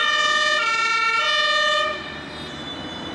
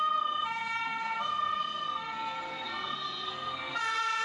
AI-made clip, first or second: second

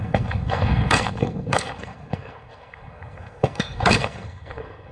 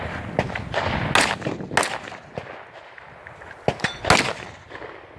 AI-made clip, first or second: first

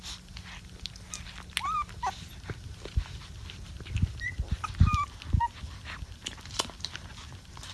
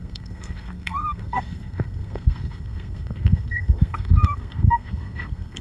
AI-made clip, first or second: second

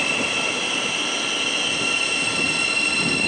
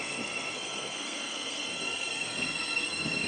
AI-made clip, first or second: second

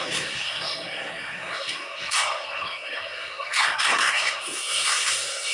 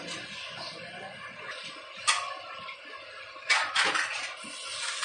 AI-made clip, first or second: first